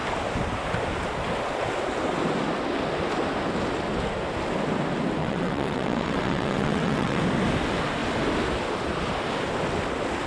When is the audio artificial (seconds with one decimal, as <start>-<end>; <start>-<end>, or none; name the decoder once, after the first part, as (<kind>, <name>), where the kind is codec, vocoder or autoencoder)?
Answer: 5.2-7.2 (vocoder, WaveNeXt)